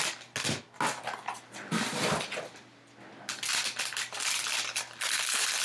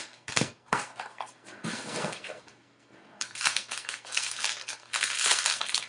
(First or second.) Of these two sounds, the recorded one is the first